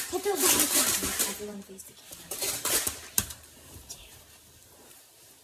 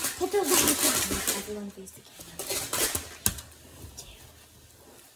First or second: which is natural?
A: second